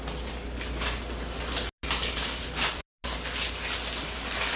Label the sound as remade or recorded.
recorded